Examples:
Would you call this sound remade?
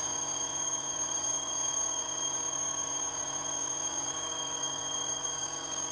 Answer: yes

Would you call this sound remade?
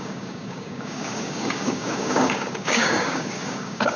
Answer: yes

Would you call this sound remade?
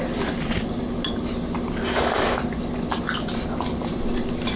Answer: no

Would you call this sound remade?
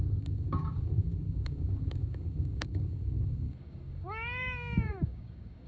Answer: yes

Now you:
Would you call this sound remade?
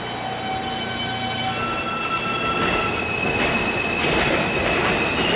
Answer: no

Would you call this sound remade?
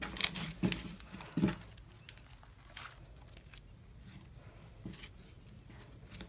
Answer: no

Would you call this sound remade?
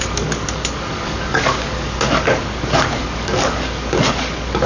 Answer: yes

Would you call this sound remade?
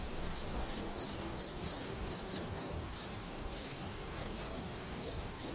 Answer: yes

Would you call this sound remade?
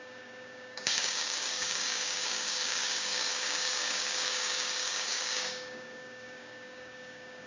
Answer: yes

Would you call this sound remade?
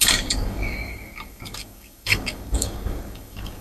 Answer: yes